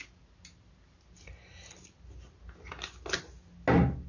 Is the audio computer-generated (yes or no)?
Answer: no